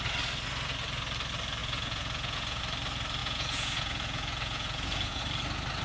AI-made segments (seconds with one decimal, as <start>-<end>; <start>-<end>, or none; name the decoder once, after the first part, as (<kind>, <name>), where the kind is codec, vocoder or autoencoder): 1.6-2.6 (vocoder, Vocos); 3.2-5.2